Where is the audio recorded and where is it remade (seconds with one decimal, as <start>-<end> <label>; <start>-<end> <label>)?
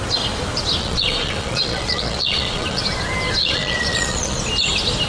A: 0.0-0.8 recorded; 0.8-2.8 remade; 2.8-3.4 recorded; 3.4-4.4 remade; 4.4-5.1 recorded